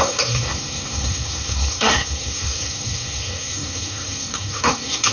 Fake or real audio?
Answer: fake